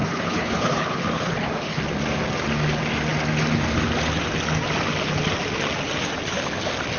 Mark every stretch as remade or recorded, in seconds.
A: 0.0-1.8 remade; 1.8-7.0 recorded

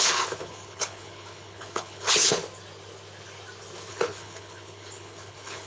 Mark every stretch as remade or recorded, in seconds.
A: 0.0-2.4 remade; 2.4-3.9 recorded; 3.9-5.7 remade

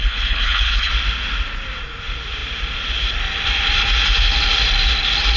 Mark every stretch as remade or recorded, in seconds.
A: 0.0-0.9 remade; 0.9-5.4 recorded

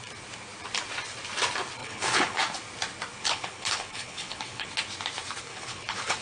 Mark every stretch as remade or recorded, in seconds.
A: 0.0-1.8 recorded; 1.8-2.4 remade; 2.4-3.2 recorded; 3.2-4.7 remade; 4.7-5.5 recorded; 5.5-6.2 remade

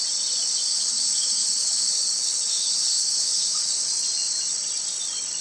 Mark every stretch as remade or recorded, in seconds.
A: 0.0-0.7 recorded; 0.7-3.9 remade; 3.9-5.4 recorded

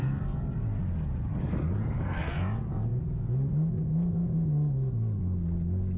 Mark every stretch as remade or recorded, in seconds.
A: 0.0-6.0 recorded